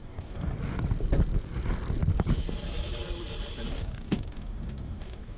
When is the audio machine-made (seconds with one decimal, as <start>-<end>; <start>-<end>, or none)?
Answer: 0.0-0.5; 3.7-5.4